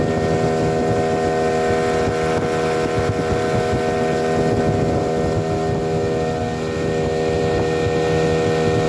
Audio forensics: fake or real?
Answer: real